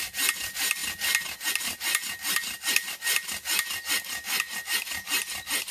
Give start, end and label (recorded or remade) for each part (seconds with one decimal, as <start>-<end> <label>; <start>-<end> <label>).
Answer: 0.0-5.7 recorded